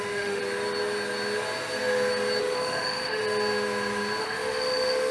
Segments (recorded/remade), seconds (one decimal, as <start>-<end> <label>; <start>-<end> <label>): 0.0-0.4 remade; 0.4-2.4 recorded; 2.4-3.2 remade; 3.2-4.2 recorded; 4.2-5.1 remade